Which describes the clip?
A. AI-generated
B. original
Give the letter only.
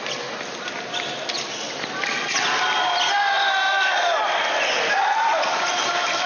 B